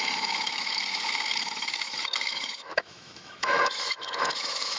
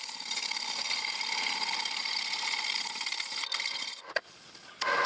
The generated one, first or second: first